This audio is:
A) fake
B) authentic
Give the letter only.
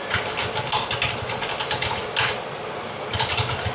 B